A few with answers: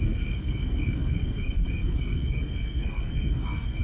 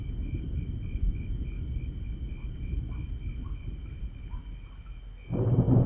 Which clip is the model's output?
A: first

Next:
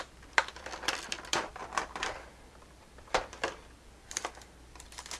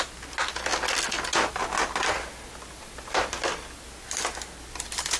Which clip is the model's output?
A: first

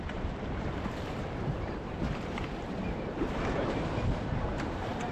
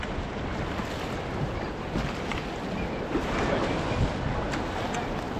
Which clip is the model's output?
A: first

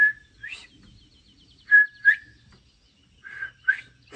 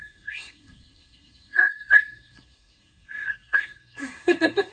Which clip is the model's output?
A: second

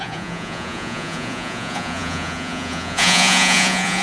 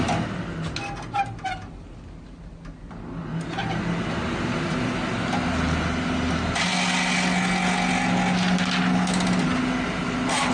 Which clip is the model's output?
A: first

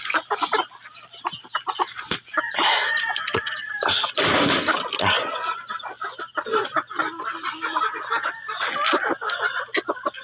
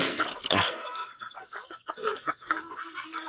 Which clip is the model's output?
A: second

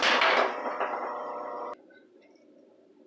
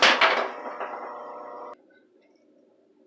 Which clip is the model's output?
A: first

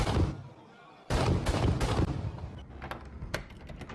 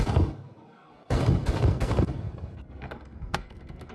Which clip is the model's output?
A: second